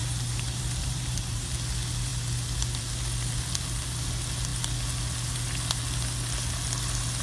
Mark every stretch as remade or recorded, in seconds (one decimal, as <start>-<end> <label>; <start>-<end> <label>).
0.0-1.5 remade; 1.5-7.2 recorded